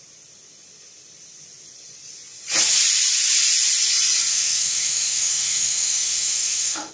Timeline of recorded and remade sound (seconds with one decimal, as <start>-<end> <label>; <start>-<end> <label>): 0.0-4.3 recorded; 4.3-6.9 remade